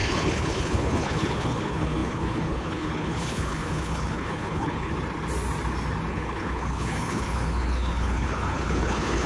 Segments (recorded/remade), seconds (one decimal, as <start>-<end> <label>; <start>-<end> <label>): 0.0-4.9 remade; 4.9-6.1 recorded; 6.1-9.3 remade